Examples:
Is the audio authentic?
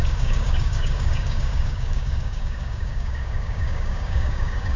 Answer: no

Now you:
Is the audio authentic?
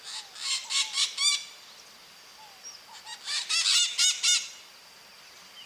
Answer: yes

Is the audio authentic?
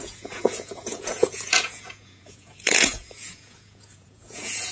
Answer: no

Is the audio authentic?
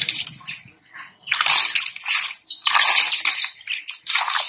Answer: yes